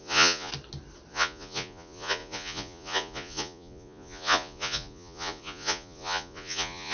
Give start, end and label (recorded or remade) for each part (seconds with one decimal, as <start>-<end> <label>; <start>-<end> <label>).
0.0-0.5 remade; 0.5-1.1 recorded; 1.1-6.9 remade